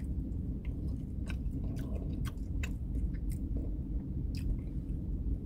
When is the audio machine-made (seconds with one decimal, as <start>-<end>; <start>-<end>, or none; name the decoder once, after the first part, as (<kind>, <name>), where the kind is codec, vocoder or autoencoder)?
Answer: 0.0-3.6 (vocoder, BigVGAN v2); 4.5-5.5